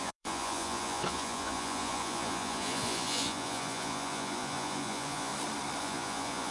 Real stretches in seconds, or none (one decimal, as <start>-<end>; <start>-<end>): 5.3-5.8